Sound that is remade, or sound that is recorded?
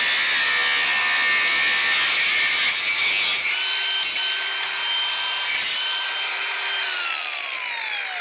recorded